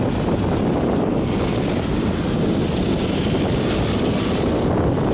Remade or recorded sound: recorded